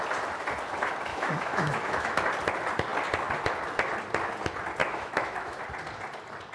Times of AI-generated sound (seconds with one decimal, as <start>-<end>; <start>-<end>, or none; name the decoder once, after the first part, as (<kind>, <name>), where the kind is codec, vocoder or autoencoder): 1.1-2.1 (autoencoder, DAC-VAE); 4.8-5.6